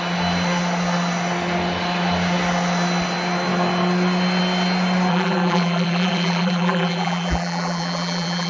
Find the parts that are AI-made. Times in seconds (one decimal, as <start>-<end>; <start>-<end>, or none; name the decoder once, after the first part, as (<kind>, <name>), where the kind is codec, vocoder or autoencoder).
5.1-8.5 (vocoder, BigVGAN v2)